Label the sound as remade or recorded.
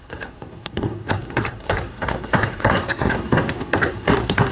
remade